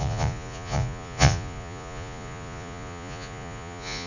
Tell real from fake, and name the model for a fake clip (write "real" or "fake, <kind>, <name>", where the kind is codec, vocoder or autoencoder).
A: fake, vocoder, Vocos